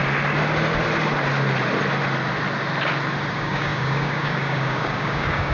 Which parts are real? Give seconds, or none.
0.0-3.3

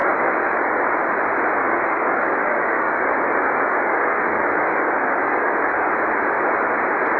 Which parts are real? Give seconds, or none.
0.8-1.6; 5.9-7.2

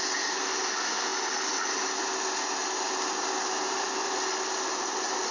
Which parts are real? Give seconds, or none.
0.0-5.3

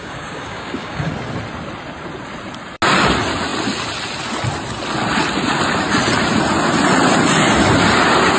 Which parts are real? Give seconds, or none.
1.1-8.4

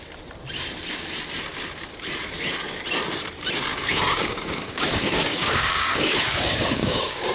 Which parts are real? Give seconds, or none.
0.0-3.7

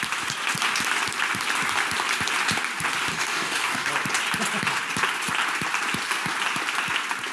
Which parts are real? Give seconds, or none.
0.0-3.1; 3.9-7.3

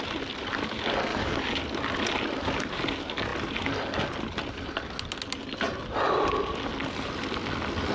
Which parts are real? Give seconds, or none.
0.0-1.1; 1.6-7.9

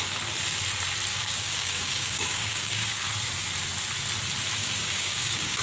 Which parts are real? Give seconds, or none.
0.0-1.1; 3.1-4.6